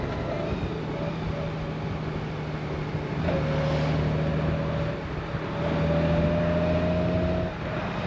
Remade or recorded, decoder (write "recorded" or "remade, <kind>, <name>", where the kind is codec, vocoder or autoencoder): recorded